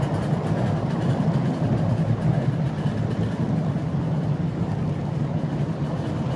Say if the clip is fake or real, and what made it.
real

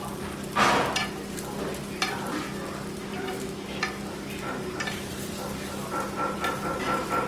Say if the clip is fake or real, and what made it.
real